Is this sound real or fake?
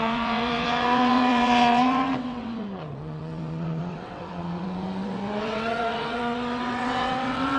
fake